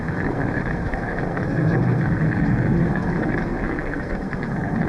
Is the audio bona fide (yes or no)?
no